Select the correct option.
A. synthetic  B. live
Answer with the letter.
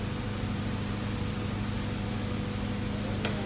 B